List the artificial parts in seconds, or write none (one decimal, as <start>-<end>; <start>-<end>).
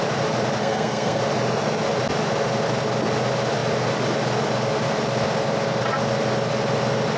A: 0.6-1.2